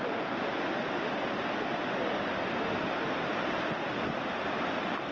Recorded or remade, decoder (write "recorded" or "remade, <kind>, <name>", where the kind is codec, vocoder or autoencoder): recorded